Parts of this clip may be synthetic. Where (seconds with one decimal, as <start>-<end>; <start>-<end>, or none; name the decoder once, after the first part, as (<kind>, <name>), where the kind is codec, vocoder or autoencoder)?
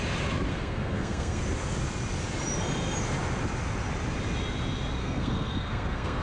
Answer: 0.5-1.4 (codec, SNAC); 5.0-6.2